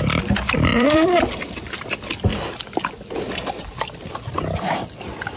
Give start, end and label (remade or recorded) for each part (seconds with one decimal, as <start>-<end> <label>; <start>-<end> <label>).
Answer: 0.0-0.7 recorded; 0.7-1.9 remade; 1.9-5.4 recorded

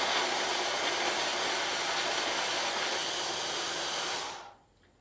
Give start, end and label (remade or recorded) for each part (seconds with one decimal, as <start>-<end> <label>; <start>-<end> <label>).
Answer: 0.0-5.0 recorded